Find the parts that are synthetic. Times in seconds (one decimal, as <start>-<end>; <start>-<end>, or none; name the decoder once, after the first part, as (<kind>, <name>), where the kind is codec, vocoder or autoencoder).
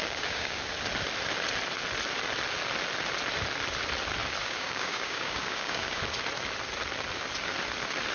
0.0-0.6 (codec, DAC); 4.4-6.0